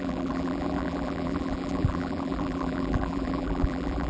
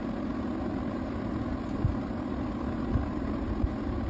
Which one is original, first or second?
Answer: second